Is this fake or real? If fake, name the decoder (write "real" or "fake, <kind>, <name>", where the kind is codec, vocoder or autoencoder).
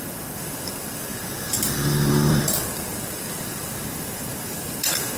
fake, vocoder, BigVGAN v2